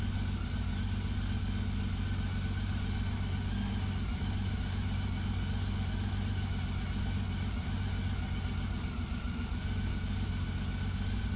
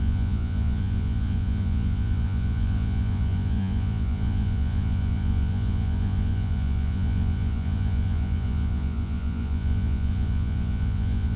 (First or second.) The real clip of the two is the first